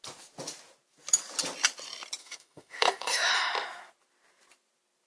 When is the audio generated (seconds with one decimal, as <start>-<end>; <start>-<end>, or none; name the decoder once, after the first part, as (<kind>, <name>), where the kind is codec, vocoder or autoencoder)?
2.2-3.3 (autoencoder, DAC-VAE)